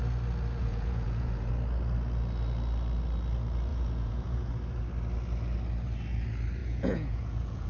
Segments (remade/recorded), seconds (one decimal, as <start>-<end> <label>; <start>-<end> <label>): 0.0-0.6 recorded; 0.6-1.5 remade; 1.5-3.7 recorded; 3.7-4.5 remade; 4.5-6.6 recorded; 6.6-7.7 remade